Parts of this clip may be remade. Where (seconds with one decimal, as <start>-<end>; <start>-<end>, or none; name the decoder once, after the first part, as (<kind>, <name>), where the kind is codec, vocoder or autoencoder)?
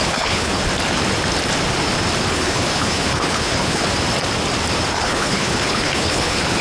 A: 0.0-0.5 (codec, HILCodec); 2.3-3.9; 5.0-6.6